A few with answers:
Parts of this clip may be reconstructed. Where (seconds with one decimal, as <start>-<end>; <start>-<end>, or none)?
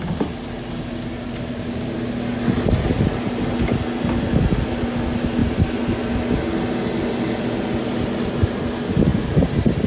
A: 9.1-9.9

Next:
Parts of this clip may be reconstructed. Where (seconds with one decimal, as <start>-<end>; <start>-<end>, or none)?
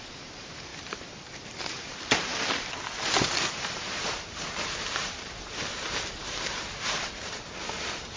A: 0.0-2.3; 3.2-8.2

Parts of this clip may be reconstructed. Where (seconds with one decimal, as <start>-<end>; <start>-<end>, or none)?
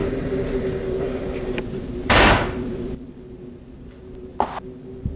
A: 0.0-3.1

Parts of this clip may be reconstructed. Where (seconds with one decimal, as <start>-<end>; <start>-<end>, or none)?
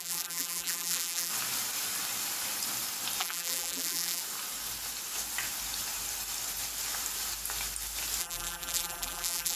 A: 0.0-1.3; 3.2-4.2; 8.2-9.6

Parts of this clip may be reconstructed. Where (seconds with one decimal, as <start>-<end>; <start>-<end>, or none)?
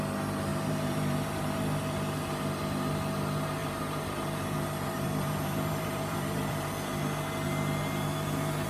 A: 0.5-1.8; 3.6-6.7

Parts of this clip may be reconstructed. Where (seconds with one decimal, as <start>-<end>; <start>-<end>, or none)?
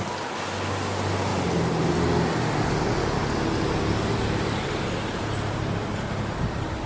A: none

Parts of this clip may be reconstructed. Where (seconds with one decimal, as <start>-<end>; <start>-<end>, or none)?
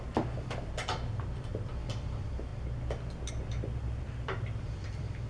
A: 0.0-2.5; 3.3-5.3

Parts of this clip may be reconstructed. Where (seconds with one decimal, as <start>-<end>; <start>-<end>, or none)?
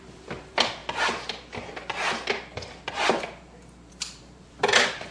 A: 0.0-0.8; 3.9-5.1